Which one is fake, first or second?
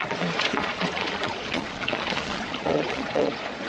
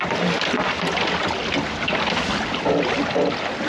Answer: first